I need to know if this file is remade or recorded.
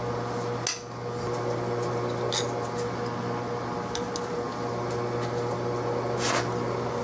recorded